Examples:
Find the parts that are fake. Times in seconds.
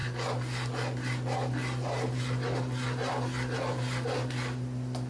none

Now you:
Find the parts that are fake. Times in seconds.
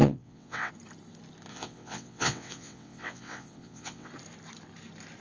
0.0-0.7 (vocoder, WaveNeXt); 1.5-4.1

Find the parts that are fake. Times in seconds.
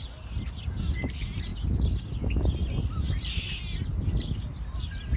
none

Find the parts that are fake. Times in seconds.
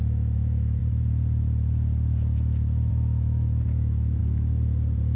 0.0-0.8 (autoencoder, DAC-VAE); 2.9-4.2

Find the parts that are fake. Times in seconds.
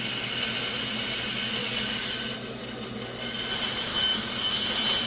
1.6-2.1 (codec, DAC); 3.9-4.5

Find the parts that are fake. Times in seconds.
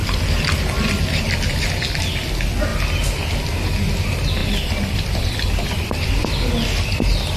4.4-6.3 (vocoder, BigVGAN v2)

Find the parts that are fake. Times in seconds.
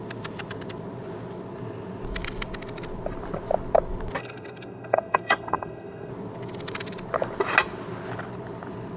4.2-6.1 (codec, SNAC)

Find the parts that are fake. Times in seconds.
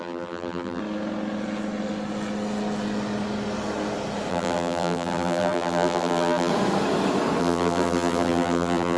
0.0-0.8 (vocoder, BigVGAN v2); 4.3-6.5; 7.4-9.0